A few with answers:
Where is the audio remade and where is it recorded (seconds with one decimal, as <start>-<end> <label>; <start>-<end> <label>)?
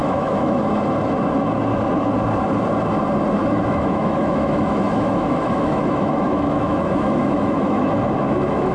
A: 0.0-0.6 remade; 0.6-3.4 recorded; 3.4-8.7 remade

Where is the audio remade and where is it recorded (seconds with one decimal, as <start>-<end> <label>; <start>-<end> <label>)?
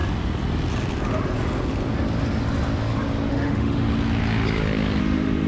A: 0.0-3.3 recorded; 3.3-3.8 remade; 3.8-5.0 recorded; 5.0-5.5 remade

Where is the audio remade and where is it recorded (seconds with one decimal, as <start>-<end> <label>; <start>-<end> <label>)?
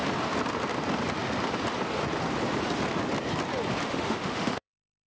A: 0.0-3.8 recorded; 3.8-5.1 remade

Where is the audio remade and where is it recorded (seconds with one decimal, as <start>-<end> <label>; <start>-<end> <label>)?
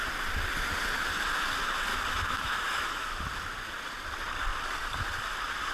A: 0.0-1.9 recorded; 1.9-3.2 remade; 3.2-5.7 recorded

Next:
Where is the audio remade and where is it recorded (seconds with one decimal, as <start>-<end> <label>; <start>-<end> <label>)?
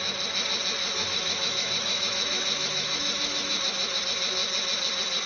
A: 0.0-0.8 recorded; 0.8-4.0 remade; 4.0-5.3 recorded